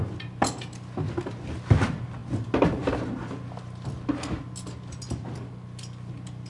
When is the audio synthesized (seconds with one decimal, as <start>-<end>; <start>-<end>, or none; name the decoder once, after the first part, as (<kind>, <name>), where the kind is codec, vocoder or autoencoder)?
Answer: none